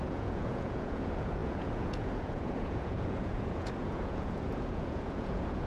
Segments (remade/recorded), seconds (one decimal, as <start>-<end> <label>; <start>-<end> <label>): 0.0-5.7 remade